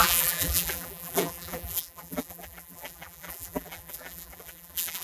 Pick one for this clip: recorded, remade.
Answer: remade